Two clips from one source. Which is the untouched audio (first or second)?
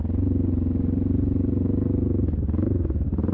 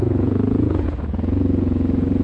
first